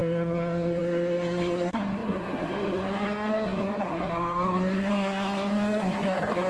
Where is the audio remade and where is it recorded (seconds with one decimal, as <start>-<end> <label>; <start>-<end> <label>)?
0.0-6.5 remade